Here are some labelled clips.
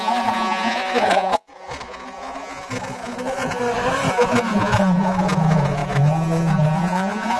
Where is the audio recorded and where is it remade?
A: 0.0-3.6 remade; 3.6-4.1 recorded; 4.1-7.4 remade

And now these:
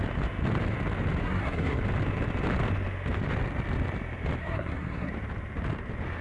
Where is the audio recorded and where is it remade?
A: 0.0-1.2 recorded; 1.2-1.8 remade; 1.8-4.4 recorded; 4.4-5.1 remade; 5.1-6.2 recorded

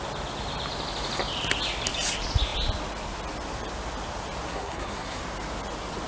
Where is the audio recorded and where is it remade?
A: 0.0-4.5 recorded; 4.5-5.2 remade; 5.2-6.1 recorded

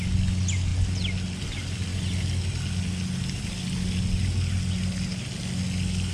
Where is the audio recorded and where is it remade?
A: 0.0-6.1 recorded